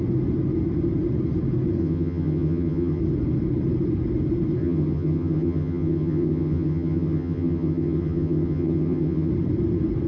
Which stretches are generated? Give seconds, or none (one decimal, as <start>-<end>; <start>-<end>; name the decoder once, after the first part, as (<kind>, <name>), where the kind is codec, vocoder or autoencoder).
1.8-3.0 (vocoder, HiFi-GAN); 4.6-9.3